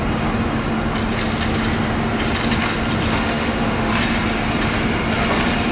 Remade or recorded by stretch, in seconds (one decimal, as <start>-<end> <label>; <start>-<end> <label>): 0.0-3.1 recorded; 3.1-3.9 remade; 3.9-5.7 recorded